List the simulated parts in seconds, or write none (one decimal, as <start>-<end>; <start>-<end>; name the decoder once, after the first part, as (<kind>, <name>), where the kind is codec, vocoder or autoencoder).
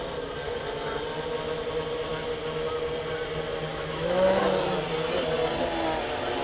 3.7-4.4 (autoencoder, DAC-VAE)